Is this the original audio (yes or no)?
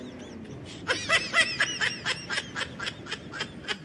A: yes